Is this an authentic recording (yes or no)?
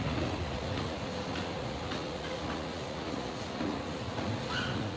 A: no